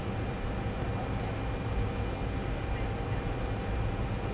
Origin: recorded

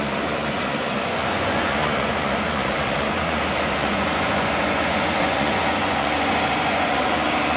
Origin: remade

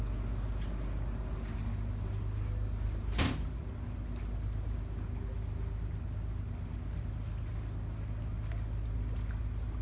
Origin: recorded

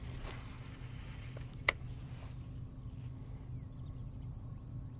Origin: recorded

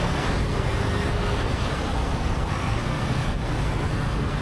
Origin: remade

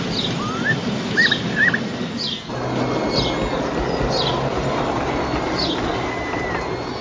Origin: recorded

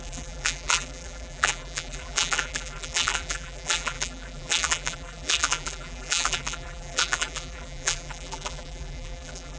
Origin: remade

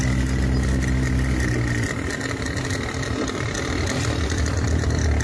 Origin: recorded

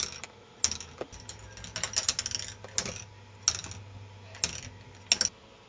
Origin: recorded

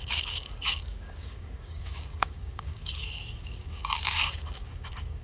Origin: remade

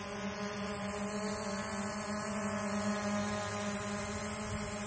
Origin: recorded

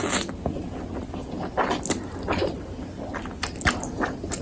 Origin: recorded